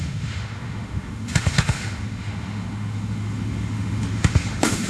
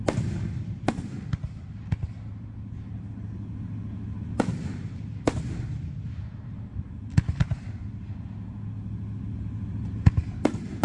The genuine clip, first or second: second